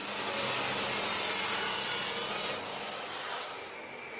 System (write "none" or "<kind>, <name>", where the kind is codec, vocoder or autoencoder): none